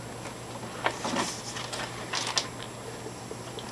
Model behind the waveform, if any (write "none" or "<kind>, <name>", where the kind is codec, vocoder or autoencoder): none